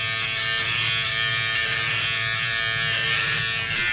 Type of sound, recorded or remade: recorded